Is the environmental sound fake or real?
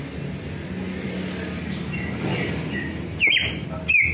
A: real